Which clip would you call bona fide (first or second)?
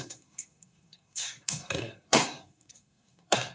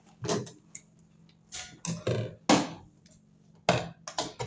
second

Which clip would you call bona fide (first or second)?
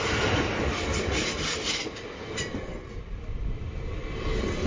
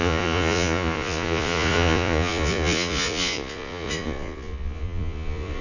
first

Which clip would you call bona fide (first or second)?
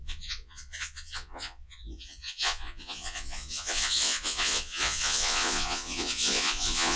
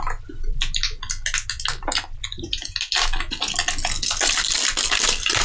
second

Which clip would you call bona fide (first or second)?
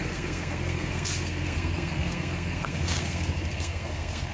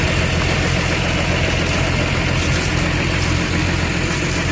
second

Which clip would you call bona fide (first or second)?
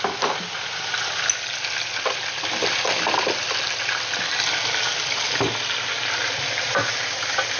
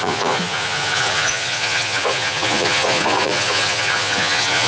first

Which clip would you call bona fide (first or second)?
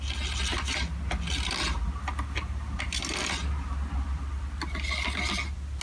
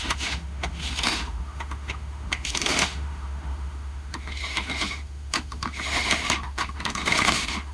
first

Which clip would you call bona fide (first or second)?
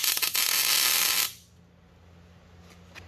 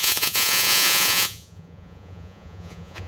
first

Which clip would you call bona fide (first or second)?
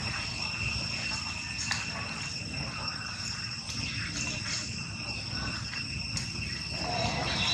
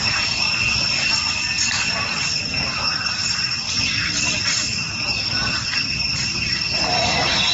first